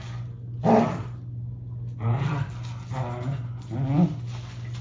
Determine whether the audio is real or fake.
real